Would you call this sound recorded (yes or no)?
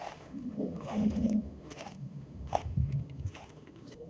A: no